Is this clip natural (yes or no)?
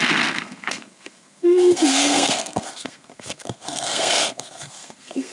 no